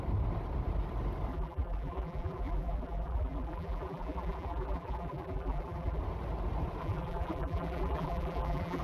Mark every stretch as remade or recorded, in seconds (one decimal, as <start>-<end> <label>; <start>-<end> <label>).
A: 0.0-1.3 recorded; 1.3-6.0 remade; 6.0-6.8 recorded; 6.8-8.8 remade